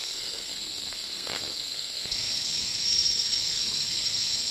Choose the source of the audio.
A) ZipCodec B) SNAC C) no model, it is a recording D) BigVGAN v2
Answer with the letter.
B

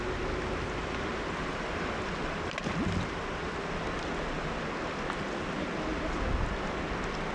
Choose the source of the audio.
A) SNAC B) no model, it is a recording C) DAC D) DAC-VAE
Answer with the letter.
B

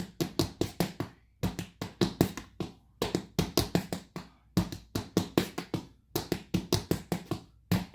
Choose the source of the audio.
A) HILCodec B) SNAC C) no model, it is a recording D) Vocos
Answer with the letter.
C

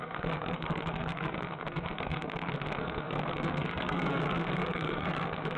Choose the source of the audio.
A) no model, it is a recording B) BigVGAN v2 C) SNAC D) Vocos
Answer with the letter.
C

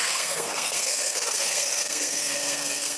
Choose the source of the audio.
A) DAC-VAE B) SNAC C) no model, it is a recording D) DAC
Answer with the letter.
B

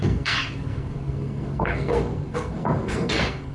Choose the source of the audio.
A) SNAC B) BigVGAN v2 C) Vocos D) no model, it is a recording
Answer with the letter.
A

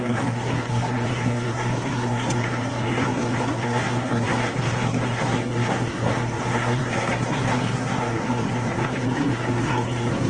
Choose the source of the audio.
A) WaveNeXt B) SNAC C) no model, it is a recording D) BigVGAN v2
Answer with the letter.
B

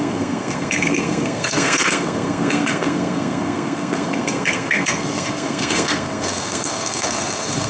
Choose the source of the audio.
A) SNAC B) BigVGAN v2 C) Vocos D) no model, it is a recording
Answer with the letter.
A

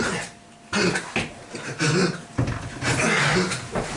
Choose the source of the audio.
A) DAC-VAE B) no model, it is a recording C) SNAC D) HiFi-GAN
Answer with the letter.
B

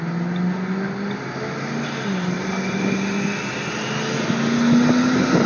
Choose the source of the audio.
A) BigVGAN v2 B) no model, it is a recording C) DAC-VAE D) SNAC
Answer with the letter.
B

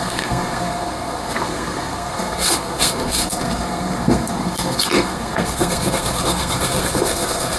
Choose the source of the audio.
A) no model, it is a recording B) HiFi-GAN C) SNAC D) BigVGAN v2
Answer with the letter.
C